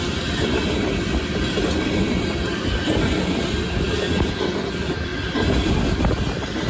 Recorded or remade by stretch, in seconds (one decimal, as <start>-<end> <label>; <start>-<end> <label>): 0.0-6.7 recorded